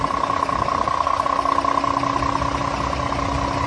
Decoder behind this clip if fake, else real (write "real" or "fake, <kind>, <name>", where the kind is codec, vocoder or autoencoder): real